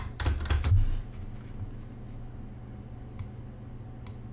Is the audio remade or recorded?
recorded